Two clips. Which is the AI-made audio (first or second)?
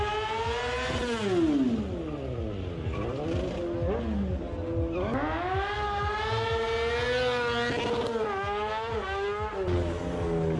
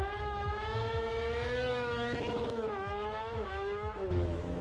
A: second